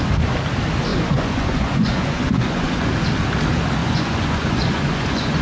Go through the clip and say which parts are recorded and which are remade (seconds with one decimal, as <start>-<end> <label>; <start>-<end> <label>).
0.0-0.9 recorded; 0.9-2.9 remade; 2.9-3.8 recorded; 3.8-5.4 remade

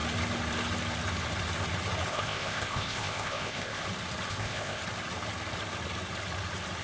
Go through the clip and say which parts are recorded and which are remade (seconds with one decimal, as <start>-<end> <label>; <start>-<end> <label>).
0.0-2.1 recorded; 2.1-3.8 remade; 3.8-4.3 recorded; 4.3-4.8 remade; 4.8-6.8 recorded